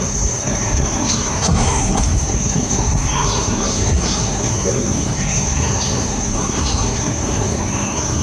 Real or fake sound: fake